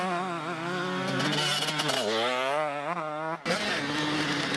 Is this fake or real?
real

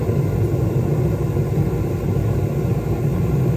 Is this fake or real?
real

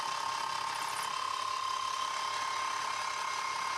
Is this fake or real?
real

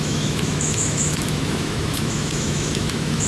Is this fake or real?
fake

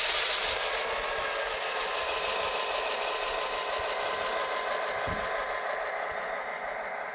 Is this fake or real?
real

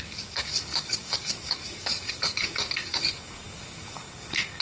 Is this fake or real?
fake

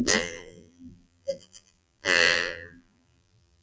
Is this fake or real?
fake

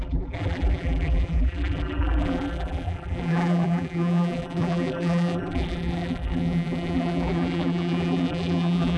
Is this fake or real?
fake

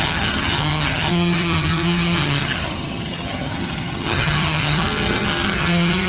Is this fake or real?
fake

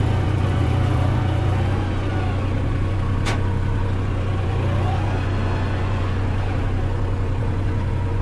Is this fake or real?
fake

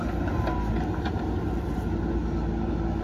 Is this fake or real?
real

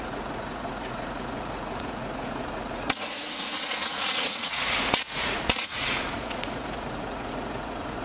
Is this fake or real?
fake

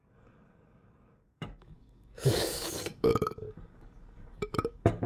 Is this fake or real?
fake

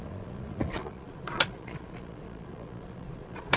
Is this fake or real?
fake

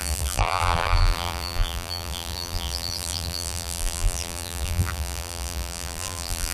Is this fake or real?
fake